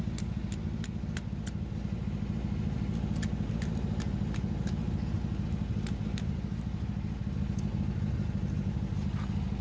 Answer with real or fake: real